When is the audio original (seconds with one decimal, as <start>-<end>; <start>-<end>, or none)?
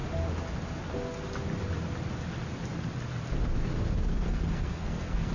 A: 0.0-3.6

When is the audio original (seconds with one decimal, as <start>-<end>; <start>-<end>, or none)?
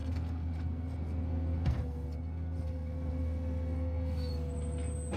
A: 4.3-5.2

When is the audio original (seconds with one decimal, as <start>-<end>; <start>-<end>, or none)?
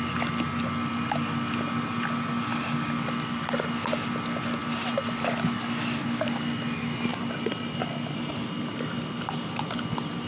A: 0.0-10.3